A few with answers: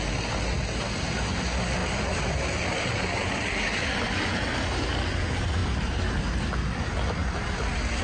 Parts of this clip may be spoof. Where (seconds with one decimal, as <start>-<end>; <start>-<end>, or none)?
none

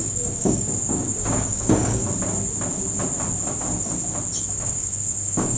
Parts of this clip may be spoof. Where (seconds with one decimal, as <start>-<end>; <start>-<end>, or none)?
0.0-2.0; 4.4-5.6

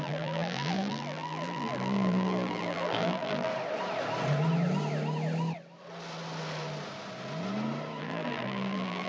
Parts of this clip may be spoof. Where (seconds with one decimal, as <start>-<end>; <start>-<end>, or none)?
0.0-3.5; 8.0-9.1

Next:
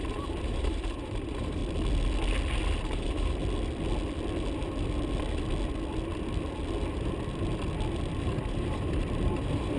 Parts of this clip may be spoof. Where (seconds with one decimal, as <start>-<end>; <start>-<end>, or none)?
0.0-1.6; 2.8-3.4; 8.2-9.8